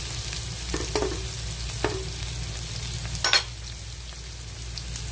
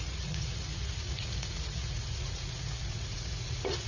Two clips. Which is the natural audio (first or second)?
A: first